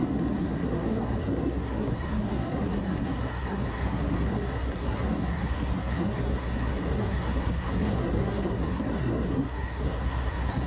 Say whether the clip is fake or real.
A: fake